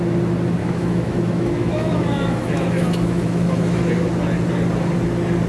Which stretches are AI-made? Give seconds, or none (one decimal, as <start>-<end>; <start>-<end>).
0.6-3.9